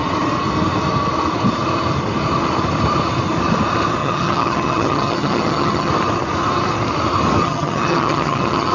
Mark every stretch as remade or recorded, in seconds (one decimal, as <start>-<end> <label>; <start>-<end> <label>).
0.0-4.0 recorded; 4.0-5.9 remade; 5.9-7.4 recorded; 7.4-8.7 remade